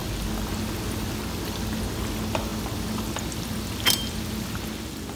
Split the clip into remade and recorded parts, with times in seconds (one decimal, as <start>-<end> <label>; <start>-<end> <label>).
0.0-5.2 recorded